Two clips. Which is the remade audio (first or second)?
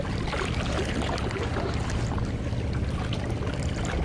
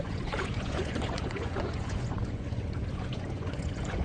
second